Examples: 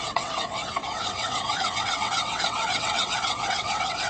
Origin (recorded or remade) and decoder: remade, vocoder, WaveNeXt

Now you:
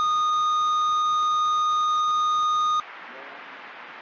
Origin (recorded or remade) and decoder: recorded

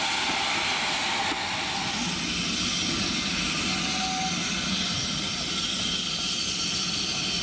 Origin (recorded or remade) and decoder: recorded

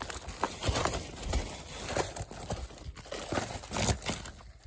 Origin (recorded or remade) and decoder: recorded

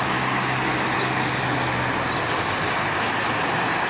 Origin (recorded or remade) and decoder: recorded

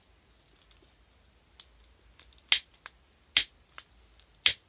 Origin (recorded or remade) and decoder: recorded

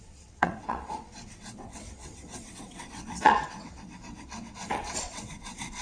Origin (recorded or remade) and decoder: remade, vocoder, WaveNeXt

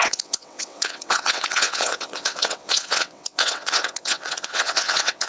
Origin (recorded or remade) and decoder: remade, vocoder, WaveNeXt